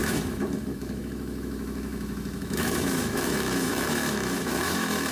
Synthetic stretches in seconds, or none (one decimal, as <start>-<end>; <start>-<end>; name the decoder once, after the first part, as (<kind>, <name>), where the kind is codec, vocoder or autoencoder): 0.0-5.1 (autoencoder, DAC-VAE)